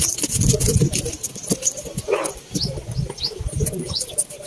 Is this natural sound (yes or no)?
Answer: yes